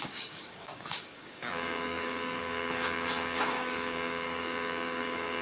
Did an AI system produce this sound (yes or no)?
yes